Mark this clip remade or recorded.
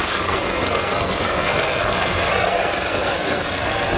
remade